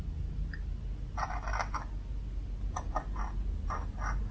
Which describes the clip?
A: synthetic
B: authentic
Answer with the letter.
B